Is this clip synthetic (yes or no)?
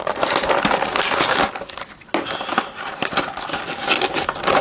no